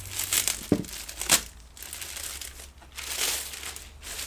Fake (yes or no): no